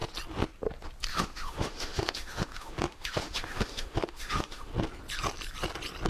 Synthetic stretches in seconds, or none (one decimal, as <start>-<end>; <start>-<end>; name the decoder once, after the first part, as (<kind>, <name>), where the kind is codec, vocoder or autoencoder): 1.1-4.7 (autoencoder, DAC-VAE)